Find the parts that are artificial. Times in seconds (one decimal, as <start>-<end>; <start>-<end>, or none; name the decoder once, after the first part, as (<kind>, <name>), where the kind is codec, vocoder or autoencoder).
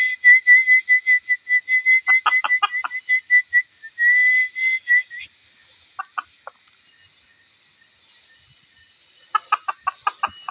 4.6-5.1 (codec, DAC)